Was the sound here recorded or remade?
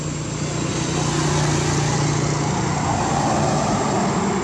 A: recorded